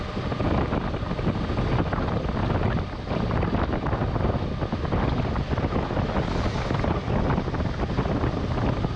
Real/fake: real